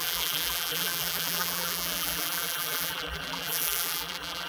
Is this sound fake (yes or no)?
yes